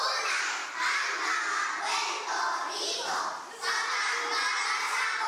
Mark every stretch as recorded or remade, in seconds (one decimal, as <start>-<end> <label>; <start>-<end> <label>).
0.0-5.3 recorded